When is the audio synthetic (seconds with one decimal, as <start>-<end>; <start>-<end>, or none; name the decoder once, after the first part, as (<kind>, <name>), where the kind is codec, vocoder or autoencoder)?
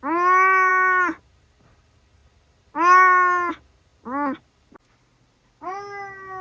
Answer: none